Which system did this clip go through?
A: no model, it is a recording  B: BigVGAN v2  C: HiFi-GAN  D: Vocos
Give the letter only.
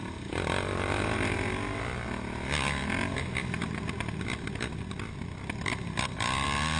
A